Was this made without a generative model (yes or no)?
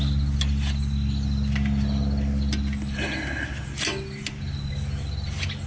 yes